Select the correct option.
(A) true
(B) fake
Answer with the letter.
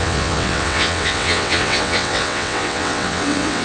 B